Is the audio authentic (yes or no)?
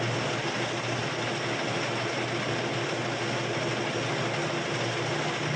yes